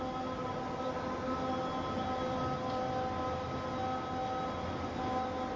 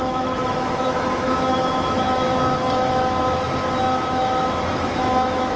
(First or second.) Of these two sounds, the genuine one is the first